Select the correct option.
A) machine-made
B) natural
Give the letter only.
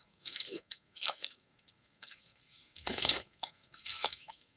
A